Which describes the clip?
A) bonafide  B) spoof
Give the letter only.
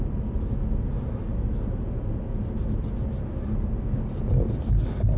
A